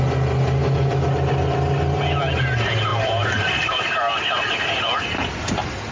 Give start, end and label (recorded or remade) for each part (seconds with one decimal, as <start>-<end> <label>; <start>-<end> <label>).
0.0-2.9 recorded; 2.9-4.4 remade; 4.4-5.9 recorded